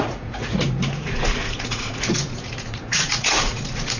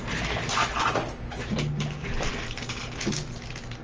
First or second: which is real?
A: second